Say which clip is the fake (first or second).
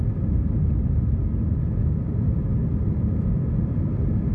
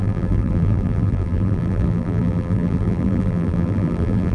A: second